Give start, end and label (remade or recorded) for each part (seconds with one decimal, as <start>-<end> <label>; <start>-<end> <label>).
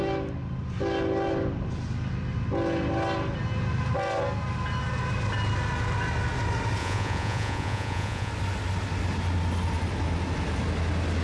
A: 0.0-6.8 recorded; 6.8-8.3 remade; 8.3-11.2 recorded